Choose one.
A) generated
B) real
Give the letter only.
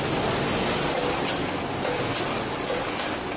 B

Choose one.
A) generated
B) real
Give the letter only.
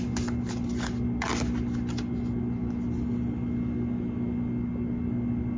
B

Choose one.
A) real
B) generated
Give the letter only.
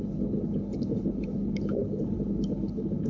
B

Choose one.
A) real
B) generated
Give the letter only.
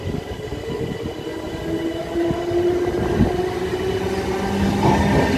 A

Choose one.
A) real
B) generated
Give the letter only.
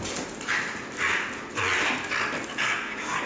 A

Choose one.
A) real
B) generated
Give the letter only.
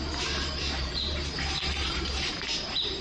B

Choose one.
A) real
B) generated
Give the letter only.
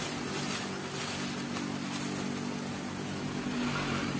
A